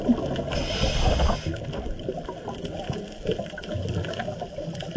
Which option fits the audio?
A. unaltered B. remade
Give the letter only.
A